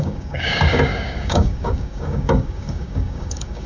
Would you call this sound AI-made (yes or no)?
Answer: yes